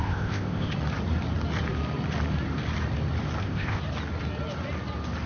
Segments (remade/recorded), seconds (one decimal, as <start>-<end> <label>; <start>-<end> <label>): 0.0-0.7 remade; 0.7-3.4 recorded; 3.4-3.8 remade; 3.8-5.3 recorded

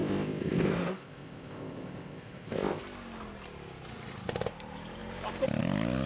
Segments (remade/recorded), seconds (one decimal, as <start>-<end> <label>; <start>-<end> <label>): 0.0-2.8 remade; 2.8-6.1 recorded

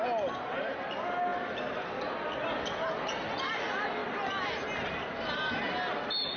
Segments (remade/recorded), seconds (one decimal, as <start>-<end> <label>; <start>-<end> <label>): 0.0-6.4 recorded